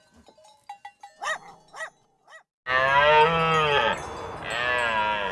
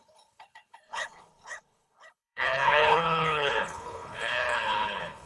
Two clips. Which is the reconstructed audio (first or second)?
second